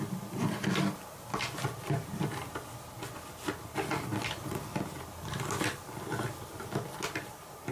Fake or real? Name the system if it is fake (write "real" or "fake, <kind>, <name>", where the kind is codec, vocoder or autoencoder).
real